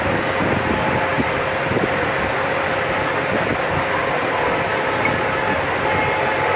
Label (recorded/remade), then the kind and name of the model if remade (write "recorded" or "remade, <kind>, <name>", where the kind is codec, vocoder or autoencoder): recorded